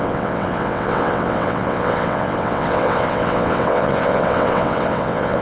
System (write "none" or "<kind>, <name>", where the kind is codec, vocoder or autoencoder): vocoder, WaveNeXt